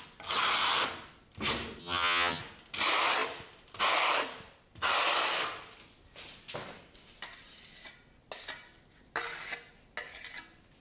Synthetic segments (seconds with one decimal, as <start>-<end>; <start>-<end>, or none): 1.8-2.4

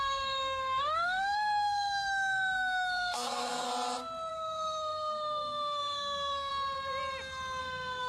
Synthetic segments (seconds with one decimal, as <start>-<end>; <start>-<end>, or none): 0.0-3.7; 4.3-6.5; 7.6-8.1

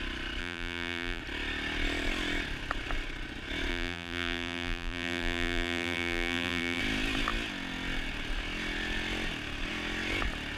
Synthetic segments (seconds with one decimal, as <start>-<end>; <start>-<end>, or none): 0.4-1.2; 3.7-6.8

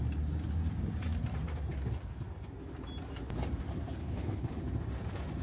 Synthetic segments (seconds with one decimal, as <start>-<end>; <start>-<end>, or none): 4.0-4.6

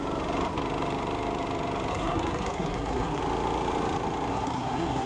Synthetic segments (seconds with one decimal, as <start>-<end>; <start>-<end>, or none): 1.9-3.2; 4.3-5.1

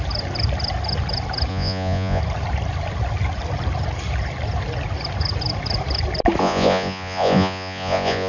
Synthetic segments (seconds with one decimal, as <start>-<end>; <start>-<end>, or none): 1.5-2.2; 6.4-8.3